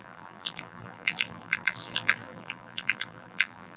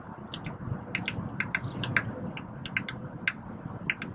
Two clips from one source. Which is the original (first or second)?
second